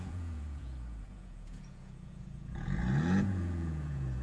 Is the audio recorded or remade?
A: remade